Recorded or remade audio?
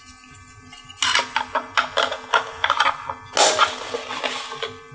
recorded